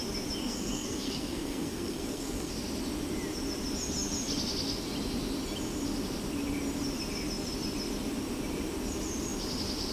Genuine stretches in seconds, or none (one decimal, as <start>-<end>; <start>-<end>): 0.0-0.4; 2.5-9.9